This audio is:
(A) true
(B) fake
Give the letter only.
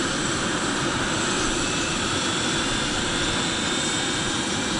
B